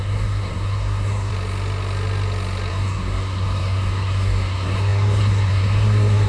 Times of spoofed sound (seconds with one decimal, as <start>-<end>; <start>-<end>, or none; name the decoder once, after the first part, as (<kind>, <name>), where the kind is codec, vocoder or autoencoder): 0.0-1.3 (codec, SNAC); 2.7-6.3